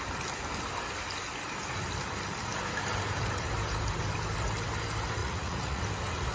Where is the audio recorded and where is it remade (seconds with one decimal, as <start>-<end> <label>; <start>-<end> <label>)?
0.0-5.2 recorded; 5.2-5.8 remade; 5.8-6.3 recorded